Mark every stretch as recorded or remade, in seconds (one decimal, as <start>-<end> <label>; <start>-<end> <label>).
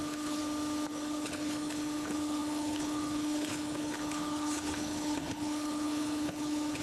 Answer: 0.0-0.4 remade; 0.4-0.9 recorded; 0.9-6.8 remade